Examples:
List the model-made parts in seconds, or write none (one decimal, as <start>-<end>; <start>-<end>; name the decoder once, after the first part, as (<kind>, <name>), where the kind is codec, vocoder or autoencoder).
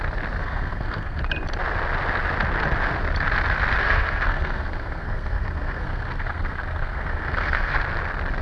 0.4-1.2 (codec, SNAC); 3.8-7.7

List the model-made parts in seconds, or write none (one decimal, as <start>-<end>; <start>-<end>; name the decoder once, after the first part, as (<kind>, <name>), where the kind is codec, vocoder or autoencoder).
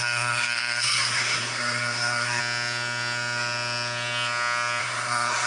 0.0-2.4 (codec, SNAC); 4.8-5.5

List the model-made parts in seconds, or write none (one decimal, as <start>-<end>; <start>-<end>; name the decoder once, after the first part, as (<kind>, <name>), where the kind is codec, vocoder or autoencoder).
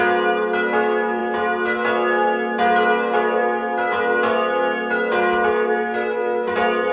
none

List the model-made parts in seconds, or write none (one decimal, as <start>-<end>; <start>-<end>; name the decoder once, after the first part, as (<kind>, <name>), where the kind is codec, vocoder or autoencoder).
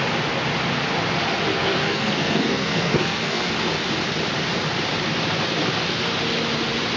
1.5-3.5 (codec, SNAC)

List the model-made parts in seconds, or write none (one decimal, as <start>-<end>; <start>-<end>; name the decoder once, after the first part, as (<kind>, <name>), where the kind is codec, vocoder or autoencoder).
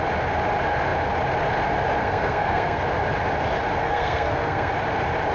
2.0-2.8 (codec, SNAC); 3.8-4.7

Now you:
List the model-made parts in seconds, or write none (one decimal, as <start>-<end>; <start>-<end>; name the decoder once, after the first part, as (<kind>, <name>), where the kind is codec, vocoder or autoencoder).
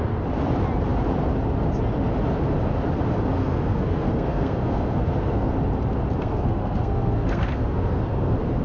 3.4-5.5 (codec, SNAC); 6.2-8.6